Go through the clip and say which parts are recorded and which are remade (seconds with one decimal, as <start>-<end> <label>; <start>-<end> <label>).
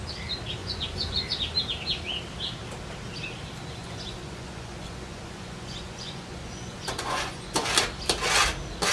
0.0-0.6 recorded; 0.6-1.2 remade; 1.2-3.8 recorded; 3.8-7.7 remade; 7.7-8.9 recorded